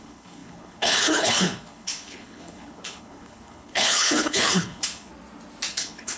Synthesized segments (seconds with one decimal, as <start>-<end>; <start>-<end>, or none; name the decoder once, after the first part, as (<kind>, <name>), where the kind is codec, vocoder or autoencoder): 0.0-5.1 (codec, HILCodec); 5.7-6.2